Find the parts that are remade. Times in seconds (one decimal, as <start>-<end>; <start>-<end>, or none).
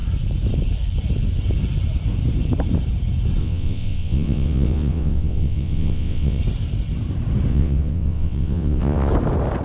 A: 3.4-6.4; 7.5-9.1